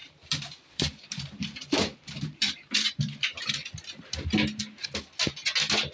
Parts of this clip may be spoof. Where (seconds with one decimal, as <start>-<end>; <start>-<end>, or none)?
0.0-3.5